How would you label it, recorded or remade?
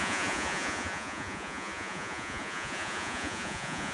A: remade